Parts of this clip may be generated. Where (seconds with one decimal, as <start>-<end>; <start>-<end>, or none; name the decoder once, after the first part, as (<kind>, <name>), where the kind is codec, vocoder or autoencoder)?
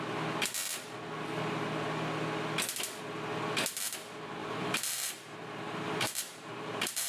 4.4-7.1 (vocoder, BigVGAN v2)